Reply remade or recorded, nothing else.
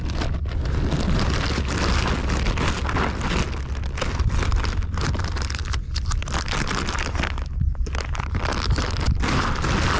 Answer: recorded